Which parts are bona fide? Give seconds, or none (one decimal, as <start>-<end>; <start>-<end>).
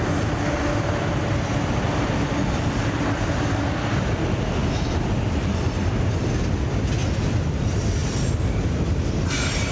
0.0-9.7